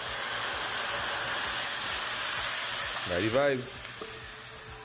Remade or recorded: recorded